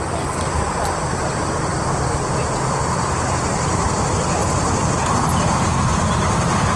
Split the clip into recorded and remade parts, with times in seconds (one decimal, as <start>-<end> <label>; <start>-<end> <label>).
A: 0.0-6.8 recorded